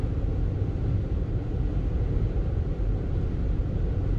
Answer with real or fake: real